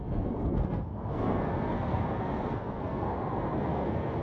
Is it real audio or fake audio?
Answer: fake